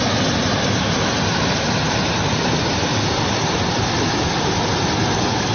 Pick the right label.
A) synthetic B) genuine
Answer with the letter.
B